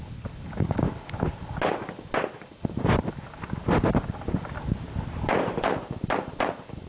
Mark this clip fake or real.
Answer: real